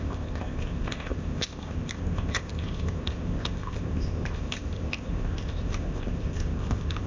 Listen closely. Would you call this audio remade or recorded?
remade